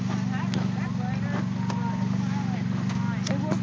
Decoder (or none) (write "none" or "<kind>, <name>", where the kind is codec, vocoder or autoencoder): none